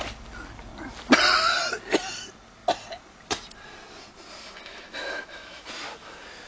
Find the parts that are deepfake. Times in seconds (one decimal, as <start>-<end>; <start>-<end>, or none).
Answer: 4.4-5.7